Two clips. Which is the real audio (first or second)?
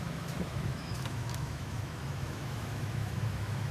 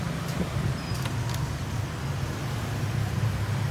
second